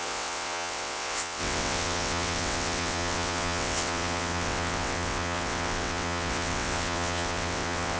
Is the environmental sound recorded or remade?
remade